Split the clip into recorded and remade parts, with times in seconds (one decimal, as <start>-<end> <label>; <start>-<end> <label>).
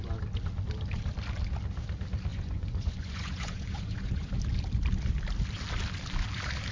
0.0-2.3 recorded; 2.3-4.3 remade; 4.3-6.7 recorded